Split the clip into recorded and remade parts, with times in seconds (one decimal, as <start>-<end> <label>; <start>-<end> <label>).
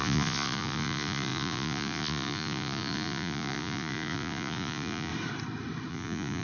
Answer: 0.0-5.1 remade; 5.1-5.9 recorded; 5.9-6.4 remade